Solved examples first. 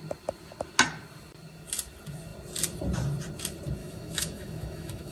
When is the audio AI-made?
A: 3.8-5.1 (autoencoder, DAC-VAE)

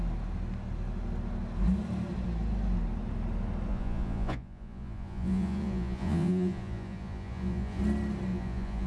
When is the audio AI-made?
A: 3.7-7.8 (vocoder, Vocos); 8.3-8.9

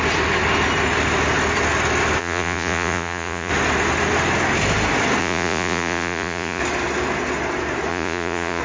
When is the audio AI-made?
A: 2.2-3.5 (vocoder, Vocos); 5.2-6.6; 7.9-8.6

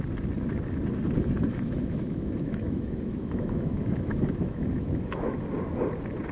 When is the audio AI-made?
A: 1.5-5.3 (autoencoder, DAC-VAE)